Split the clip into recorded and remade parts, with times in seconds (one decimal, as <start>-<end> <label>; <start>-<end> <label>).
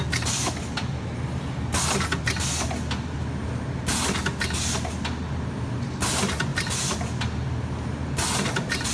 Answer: 0.0-8.9 recorded